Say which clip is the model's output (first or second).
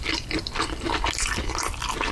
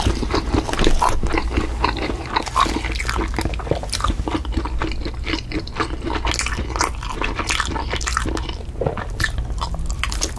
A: first